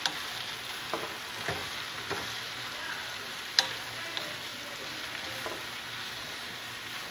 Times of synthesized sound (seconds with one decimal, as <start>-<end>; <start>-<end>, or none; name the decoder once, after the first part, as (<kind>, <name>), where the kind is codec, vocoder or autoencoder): 1.6-3.2 (vocoder, BigVGAN v2)